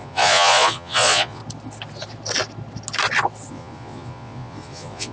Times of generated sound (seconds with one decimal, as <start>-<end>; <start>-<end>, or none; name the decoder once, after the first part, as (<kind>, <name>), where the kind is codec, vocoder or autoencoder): 0.0-1.4 (vocoder, Vocos); 3.5-5.1